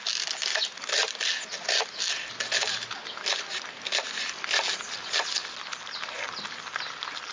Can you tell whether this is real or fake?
real